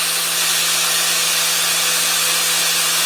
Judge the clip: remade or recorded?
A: recorded